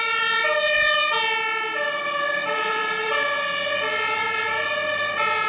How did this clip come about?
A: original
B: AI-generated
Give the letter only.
A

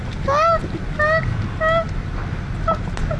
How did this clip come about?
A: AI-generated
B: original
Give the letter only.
B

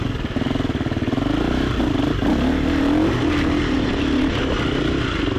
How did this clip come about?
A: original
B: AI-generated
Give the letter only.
A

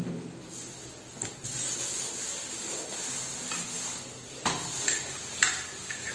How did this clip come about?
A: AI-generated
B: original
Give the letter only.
B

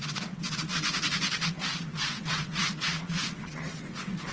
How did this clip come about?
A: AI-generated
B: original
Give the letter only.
A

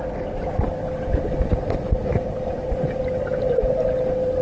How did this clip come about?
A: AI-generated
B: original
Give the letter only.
A